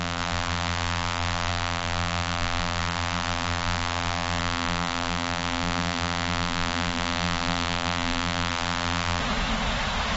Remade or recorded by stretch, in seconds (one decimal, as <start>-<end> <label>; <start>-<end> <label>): 0.0-9.2 remade; 9.2-10.2 recorded

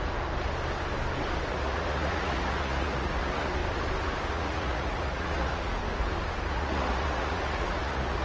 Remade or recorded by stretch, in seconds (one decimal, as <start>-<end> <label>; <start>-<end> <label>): 0.0-1.5 recorded; 1.5-3.6 remade; 3.6-4.3 recorded; 4.3-5.8 remade; 5.8-6.5 recorded; 6.5-8.2 remade

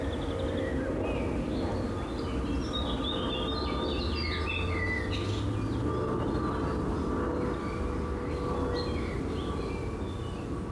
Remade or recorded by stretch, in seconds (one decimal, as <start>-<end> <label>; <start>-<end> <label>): 0.0-10.7 recorded

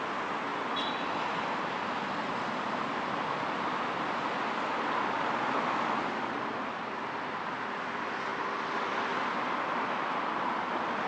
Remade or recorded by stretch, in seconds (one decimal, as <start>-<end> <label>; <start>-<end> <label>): 0.0-0.5 recorded; 0.5-4.2 remade; 4.2-8.3 recorded; 8.3-9.3 remade; 9.3-11.1 recorded

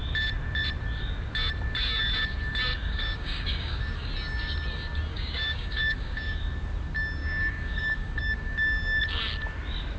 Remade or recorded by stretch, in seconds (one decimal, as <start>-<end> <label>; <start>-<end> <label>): 0.0-2.7 recorded; 2.7-4.1 remade; 4.1-5.1 recorded; 5.1-6.4 remade; 6.4-7.2 recorded; 7.2-9.0 remade; 9.0-10.0 recorded